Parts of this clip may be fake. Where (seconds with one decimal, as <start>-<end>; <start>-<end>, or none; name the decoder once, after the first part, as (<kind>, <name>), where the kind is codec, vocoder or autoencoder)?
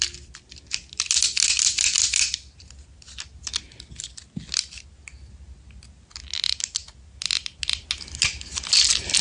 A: none